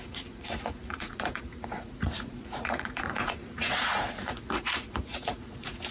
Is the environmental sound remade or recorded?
remade